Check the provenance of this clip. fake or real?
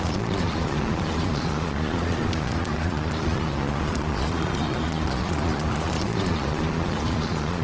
fake